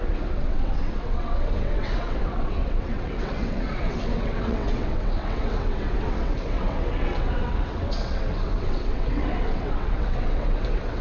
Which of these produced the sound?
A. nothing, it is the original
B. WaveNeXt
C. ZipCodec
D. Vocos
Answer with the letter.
B